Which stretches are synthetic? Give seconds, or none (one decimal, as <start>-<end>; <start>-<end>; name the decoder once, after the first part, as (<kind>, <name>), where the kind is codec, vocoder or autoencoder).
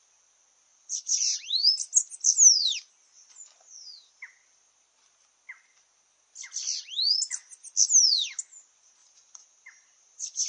0.7-1.5 (vocoder, BigVGAN v2); 9.0-10.5